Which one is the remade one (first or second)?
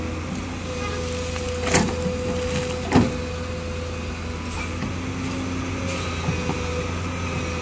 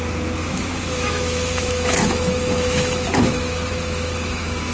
second